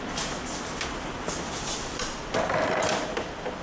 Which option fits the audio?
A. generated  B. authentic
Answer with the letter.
B